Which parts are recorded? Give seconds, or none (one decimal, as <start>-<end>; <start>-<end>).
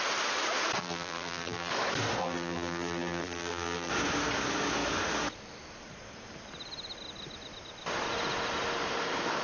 0.0-0.8; 1.7-2.2; 3.9-9.4